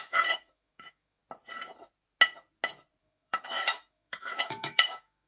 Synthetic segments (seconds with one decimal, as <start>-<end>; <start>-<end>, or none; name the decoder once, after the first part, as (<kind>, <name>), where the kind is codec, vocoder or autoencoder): 0.0-1.2 (autoencoder, DAC-VAE); 3.0-5.3

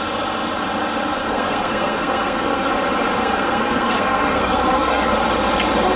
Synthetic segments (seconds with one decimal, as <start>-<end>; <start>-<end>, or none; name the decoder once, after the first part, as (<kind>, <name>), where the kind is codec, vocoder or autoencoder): 1.2-2.7 (codec, SNAC); 3.2-5.1